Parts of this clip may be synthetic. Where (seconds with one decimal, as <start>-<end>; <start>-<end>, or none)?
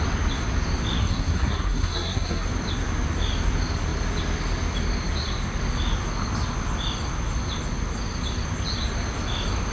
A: 1.0-2.5